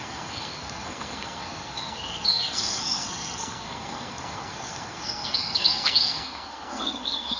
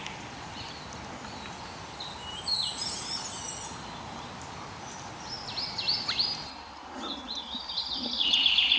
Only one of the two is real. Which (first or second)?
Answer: second